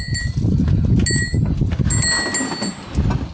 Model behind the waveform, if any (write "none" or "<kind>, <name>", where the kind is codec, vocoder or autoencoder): none